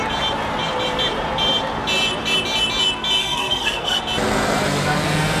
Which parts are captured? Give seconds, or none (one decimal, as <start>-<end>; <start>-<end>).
0.0-3.2; 4.0-5.4